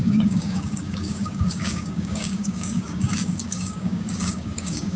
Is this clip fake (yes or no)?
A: yes